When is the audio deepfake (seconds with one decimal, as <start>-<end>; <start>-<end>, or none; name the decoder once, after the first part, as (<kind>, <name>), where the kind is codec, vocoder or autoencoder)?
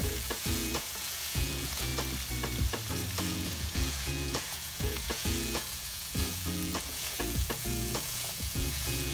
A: 0.0-1.9 (vocoder, Vocos); 3.2-9.1